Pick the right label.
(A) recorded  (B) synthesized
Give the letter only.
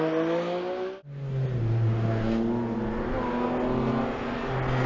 A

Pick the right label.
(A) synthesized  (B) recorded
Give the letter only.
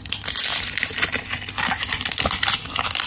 B